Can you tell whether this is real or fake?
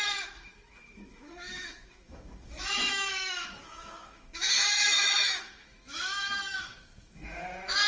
fake